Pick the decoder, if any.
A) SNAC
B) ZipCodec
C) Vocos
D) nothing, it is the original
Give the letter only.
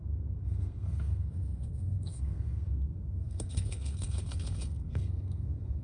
A